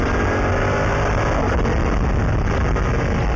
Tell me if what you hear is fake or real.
real